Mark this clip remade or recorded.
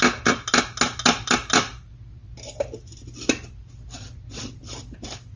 recorded